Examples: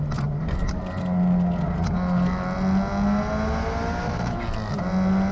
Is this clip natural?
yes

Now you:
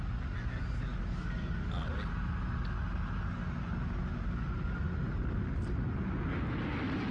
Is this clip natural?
yes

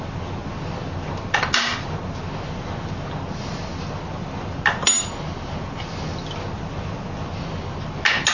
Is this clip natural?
yes